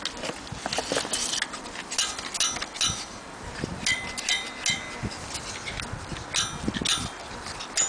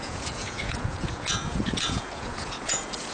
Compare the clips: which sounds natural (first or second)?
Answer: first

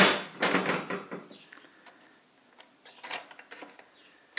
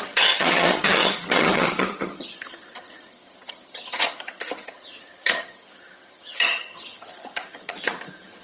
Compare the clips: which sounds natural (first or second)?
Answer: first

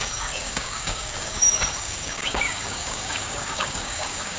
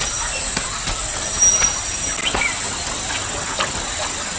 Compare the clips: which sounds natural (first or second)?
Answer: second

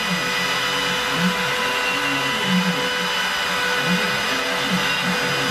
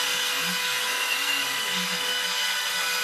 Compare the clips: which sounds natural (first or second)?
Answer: first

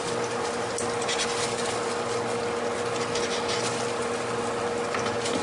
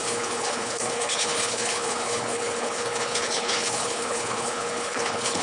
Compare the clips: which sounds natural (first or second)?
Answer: first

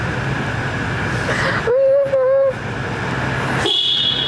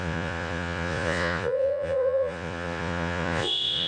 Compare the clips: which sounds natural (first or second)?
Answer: first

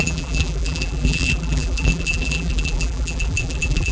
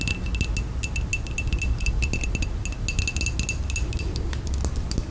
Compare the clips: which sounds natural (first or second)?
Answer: second